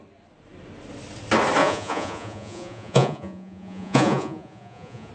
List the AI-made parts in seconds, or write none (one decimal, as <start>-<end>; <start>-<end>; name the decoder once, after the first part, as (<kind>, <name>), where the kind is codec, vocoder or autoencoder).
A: 1.6-5.1 (vocoder, Vocos)